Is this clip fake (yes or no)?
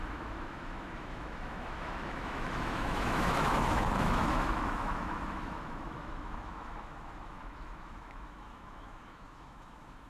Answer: yes